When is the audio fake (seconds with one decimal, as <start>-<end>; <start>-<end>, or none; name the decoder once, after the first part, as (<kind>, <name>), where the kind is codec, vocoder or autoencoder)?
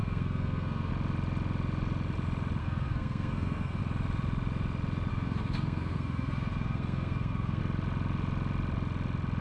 0.0-0.9 (codec, SNAC); 2.6-3.8; 5.1-7.6